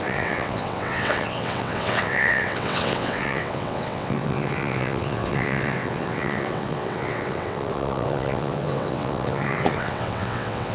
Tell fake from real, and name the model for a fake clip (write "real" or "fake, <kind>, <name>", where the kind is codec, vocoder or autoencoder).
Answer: fake, vocoder, WaveNeXt